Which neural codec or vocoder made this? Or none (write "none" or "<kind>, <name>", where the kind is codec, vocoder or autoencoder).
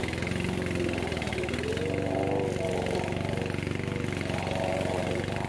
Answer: none